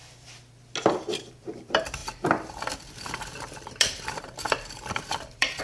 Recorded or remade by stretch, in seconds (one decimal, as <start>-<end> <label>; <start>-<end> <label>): 0.0-1.3 recorded; 1.3-5.6 remade